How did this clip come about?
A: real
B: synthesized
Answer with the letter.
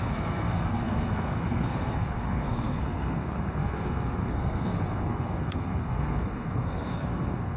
B